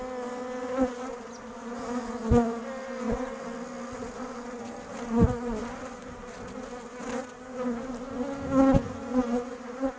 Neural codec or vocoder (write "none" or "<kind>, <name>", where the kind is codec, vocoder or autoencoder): none